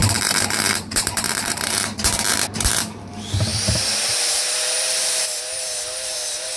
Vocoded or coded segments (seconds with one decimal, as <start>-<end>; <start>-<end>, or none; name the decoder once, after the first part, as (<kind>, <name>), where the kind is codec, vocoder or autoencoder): 0.0-6.6 (vocoder, BigVGAN v2)